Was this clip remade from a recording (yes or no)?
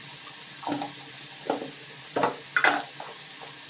no